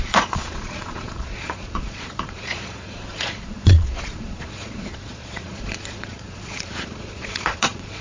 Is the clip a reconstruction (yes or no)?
yes